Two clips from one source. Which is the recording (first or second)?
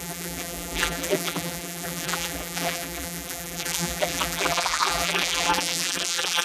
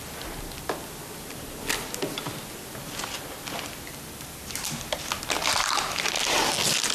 second